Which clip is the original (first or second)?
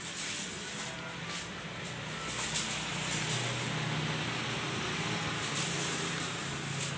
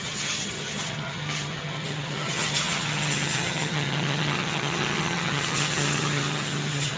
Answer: first